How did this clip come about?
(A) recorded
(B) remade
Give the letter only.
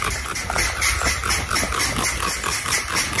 A